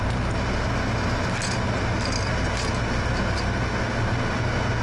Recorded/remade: recorded